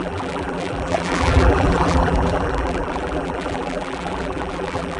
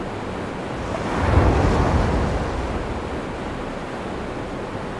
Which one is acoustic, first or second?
second